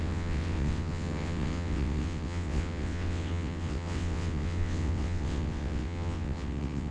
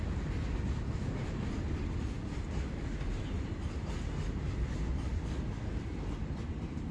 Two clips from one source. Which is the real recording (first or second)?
second